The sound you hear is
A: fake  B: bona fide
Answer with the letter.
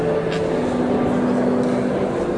B